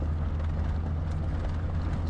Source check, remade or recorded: recorded